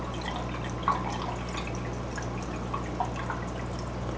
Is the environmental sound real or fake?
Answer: real